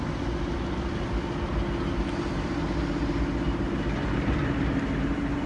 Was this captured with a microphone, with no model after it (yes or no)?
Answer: yes